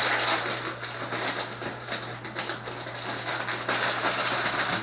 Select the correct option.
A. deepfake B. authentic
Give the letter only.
B